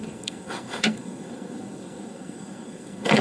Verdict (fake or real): fake